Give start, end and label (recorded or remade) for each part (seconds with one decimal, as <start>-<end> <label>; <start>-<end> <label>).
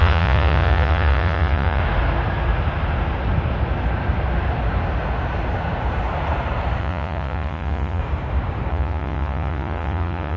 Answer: 0.0-1.8 remade; 1.8-6.8 recorded; 6.8-8.0 remade; 8.0-8.7 recorded; 8.7-10.4 remade